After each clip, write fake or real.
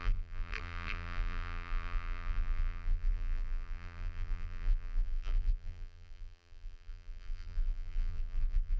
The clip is fake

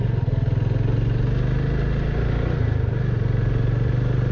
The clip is real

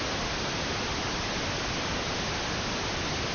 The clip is real